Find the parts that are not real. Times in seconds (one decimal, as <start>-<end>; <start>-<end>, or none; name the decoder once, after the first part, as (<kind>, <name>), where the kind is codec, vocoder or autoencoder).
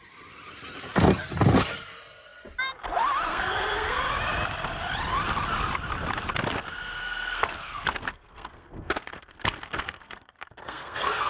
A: 3.3-4.0 (codec, SNAC); 7.0-11.3